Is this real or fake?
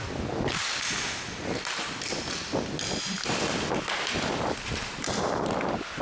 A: real